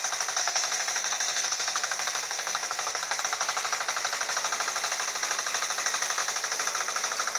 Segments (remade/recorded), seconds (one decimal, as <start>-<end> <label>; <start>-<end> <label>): 0.0-0.4 recorded; 0.4-3.2 remade; 3.2-7.4 recorded